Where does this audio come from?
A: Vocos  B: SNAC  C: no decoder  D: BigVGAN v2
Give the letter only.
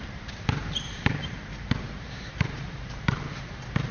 D